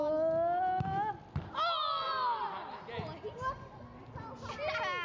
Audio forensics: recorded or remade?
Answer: recorded